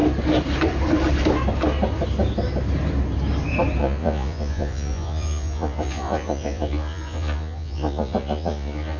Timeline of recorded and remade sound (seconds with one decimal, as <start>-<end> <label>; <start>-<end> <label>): 0.0-3.8 recorded; 3.8-9.0 remade